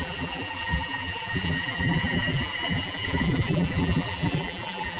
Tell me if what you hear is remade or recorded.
remade